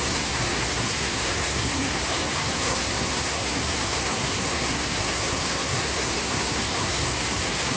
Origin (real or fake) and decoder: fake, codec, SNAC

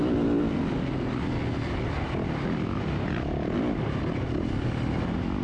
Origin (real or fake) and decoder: real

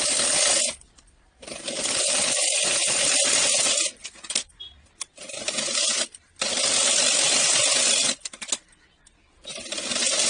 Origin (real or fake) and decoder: real